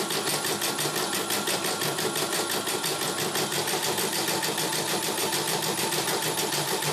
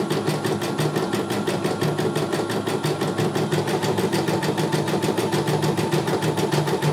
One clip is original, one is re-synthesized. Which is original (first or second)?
second